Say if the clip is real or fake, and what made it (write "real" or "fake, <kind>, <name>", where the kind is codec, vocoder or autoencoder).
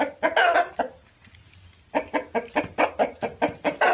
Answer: real